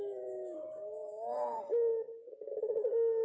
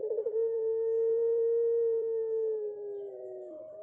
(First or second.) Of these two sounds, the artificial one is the second